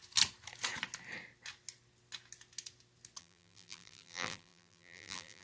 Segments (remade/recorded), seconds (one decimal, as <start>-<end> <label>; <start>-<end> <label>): 0.0-3.2 recorded; 3.2-5.4 remade

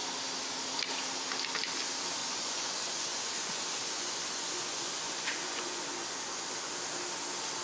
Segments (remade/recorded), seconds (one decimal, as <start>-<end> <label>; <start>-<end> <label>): 0.0-2.2 recorded; 2.2-6.8 remade; 6.8-7.6 recorded